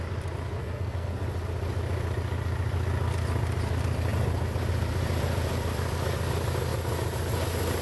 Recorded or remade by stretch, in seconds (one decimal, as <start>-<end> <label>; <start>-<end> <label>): 0.0-0.6 recorded; 0.6-1.2 remade; 1.2-7.8 recorded